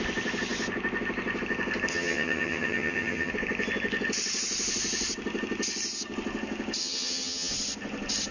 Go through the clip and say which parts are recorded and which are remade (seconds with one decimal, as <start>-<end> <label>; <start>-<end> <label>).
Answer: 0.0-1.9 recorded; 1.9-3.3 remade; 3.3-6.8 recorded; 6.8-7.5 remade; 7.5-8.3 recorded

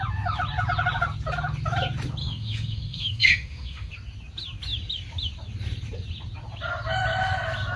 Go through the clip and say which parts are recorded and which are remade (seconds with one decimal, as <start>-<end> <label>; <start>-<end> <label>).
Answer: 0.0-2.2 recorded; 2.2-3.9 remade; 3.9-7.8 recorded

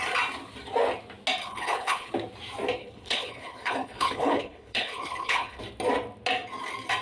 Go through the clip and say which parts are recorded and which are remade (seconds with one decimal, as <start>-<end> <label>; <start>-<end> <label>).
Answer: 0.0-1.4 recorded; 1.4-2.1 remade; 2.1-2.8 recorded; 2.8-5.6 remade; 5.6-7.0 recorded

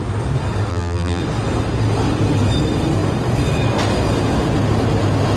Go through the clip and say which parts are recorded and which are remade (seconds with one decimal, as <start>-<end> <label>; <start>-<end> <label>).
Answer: 0.0-0.7 recorded; 0.7-1.2 remade; 1.2-5.4 recorded

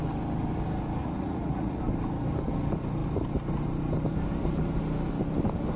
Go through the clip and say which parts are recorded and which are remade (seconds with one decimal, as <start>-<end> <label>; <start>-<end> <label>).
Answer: 0.0-1.0 recorded; 1.0-1.8 remade; 1.8-5.8 recorded

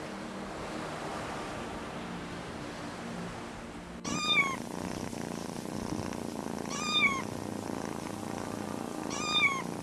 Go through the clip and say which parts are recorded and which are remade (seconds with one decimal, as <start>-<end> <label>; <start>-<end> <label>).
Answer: 0.0-9.8 recorded

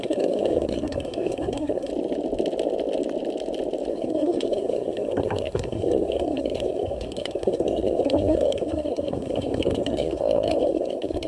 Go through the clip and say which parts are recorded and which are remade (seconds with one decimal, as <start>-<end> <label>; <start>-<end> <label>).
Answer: 0.0-1.9 remade; 1.9-3.9 recorded; 3.9-11.3 remade

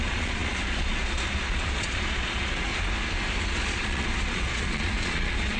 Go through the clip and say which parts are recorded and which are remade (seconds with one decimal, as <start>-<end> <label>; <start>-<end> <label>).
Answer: 0.0-2.7 remade; 2.7-3.5 recorded; 3.5-5.6 remade